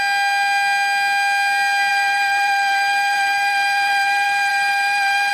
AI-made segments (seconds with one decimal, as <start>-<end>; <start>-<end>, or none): 1.9-5.3